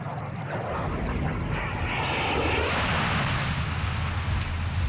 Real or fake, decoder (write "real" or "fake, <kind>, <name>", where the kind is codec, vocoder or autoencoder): real